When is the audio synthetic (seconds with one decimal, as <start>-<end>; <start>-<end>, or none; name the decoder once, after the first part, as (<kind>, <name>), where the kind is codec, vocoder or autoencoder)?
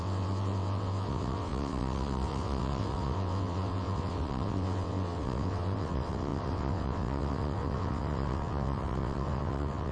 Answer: 0.0-9.9 (vocoder, WaveNeXt)